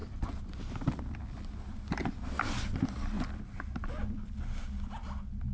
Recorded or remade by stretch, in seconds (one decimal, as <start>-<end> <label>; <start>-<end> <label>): 0.0-5.5 recorded